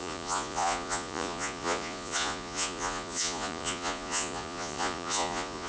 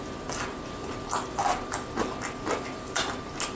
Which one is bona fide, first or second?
second